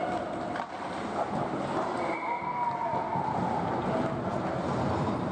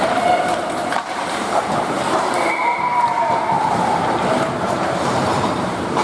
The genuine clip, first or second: first